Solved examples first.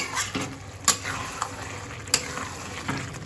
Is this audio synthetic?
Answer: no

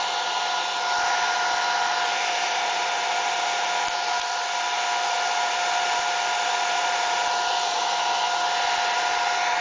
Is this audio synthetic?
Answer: no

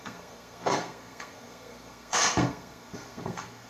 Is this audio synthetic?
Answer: yes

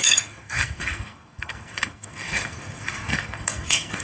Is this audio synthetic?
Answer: yes